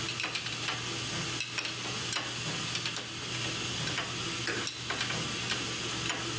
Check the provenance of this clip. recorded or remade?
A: recorded